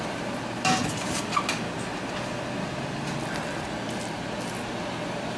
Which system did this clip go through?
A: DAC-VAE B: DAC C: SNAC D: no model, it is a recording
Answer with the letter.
D